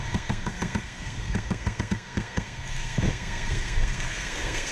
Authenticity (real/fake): fake